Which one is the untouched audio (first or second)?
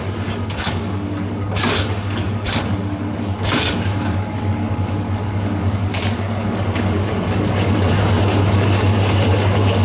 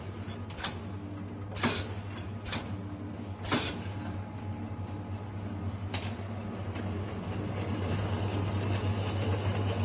second